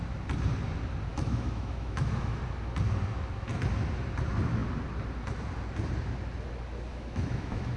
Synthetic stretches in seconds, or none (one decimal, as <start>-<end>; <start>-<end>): 1.1-2.4; 6.9-7.8